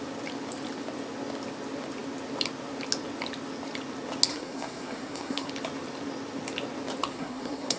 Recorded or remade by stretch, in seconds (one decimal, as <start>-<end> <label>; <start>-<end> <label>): 0.0-4.3 recorded; 4.3-5.5 remade; 5.5-7.1 recorded; 7.1-7.8 remade